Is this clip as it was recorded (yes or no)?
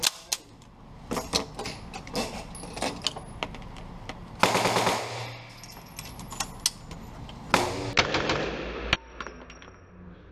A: yes